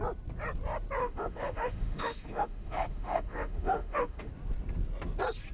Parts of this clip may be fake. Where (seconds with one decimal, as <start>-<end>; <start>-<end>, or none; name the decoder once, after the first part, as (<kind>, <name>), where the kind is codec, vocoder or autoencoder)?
1.0-4.3 (autoencoder, DAC-VAE)